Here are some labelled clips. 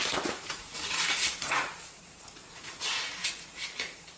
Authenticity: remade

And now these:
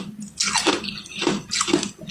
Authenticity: recorded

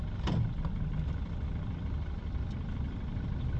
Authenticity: remade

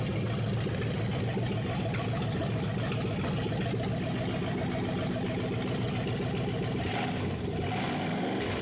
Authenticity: recorded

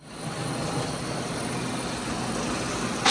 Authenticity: recorded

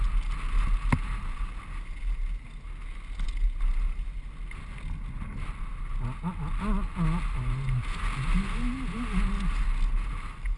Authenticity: recorded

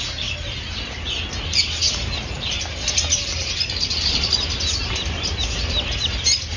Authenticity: recorded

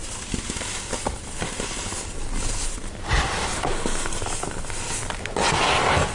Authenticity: recorded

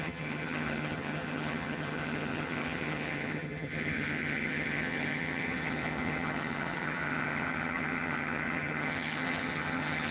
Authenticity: remade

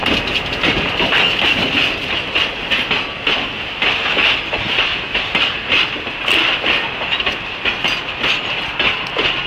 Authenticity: recorded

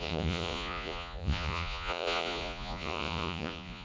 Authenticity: remade